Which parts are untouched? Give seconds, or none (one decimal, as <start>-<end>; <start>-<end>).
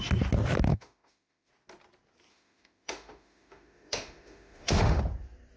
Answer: 0.0-0.7; 1.5-2.3; 5.0-5.6